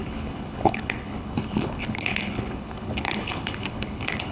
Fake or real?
fake